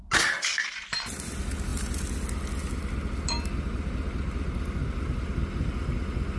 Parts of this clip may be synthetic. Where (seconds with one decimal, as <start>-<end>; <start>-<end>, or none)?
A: none